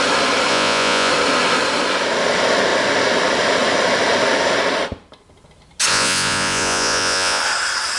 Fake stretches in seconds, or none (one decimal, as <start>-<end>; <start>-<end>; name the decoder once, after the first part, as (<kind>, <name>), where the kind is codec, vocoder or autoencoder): 0.5-1.1 (vocoder, Vocos); 5.9-7.4